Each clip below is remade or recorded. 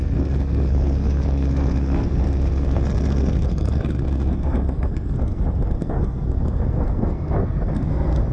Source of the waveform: remade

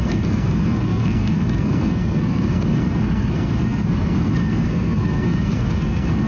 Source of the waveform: remade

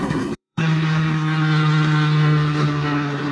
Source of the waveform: remade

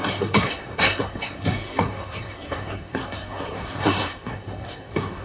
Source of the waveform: remade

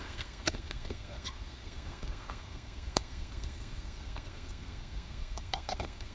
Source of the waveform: remade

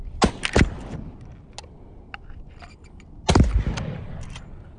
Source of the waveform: recorded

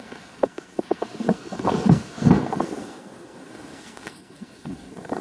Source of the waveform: remade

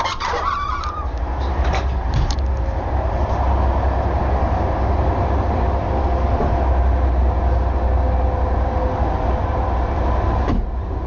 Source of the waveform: recorded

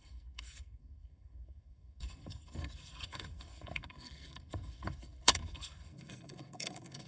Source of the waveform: remade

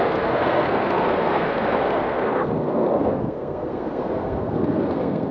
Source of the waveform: remade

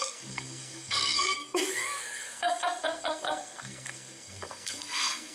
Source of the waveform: remade